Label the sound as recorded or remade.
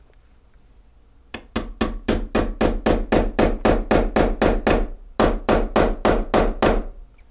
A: recorded